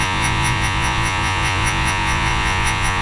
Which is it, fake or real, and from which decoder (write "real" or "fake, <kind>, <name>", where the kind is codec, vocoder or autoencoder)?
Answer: fake, vocoder, Vocos